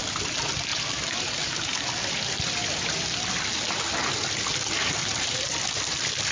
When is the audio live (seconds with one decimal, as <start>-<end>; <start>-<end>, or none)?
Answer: 0.0-5.0; 5.5-6.3